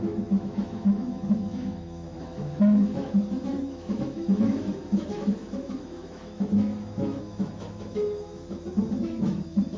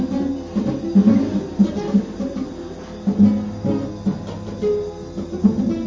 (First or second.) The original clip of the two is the second